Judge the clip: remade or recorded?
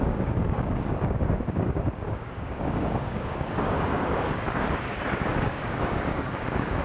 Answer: remade